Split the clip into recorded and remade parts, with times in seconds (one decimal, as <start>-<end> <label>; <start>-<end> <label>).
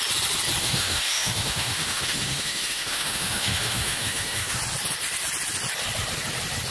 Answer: 0.0-0.6 recorded; 0.6-4.6 remade; 4.6-6.7 recorded